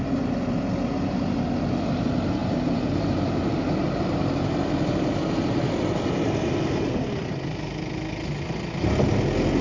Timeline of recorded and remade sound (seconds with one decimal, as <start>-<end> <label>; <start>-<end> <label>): 0.0-2.4 recorded; 2.4-3.4 remade; 3.4-9.6 recorded